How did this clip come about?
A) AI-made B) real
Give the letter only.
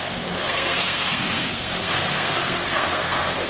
A